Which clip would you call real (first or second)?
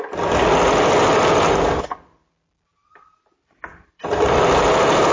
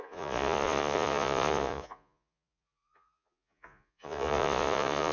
first